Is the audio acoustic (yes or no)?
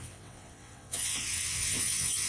no